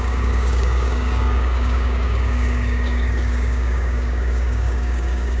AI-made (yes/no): yes